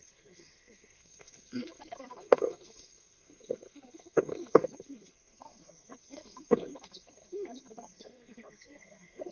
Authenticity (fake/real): fake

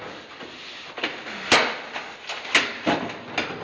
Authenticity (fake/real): real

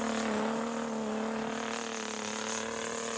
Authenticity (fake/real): real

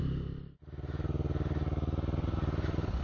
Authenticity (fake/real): real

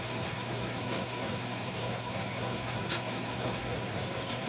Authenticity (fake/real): fake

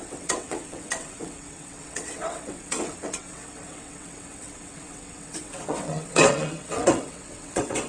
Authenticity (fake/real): fake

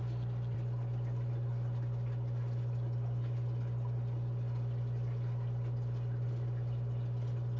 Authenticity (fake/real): real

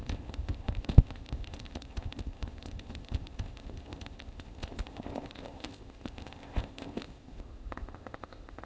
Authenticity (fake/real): fake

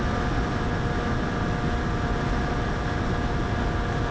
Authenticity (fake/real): real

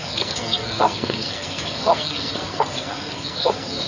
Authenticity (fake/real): fake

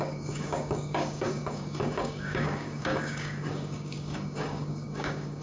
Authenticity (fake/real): fake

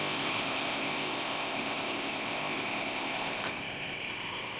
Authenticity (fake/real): fake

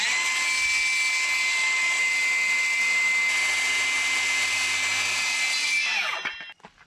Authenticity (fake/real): real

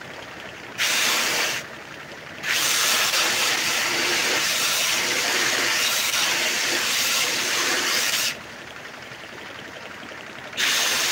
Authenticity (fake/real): fake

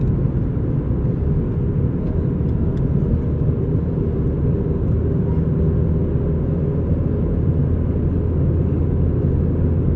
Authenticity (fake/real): real